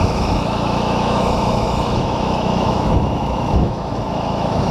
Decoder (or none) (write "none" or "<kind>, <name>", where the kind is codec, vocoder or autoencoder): autoencoder, DAC-VAE